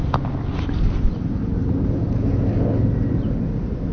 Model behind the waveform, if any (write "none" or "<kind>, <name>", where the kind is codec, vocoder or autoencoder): none